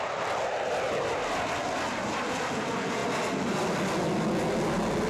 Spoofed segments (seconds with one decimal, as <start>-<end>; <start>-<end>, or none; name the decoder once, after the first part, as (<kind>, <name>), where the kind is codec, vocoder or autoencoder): none